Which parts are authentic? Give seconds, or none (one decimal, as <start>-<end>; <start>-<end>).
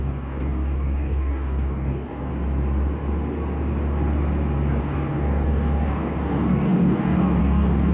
2.3-4.8